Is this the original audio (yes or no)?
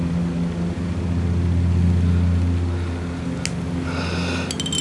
yes